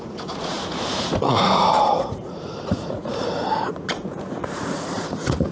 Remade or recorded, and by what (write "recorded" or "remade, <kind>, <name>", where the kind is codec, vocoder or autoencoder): remade, vocoder, Vocos